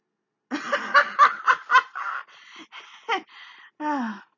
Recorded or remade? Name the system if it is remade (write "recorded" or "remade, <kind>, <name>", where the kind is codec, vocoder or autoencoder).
recorded